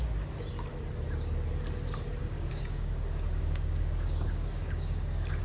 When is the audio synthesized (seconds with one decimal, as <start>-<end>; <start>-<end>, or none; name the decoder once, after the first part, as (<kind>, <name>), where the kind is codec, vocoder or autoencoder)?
2.2-5.4 (codec, DAC)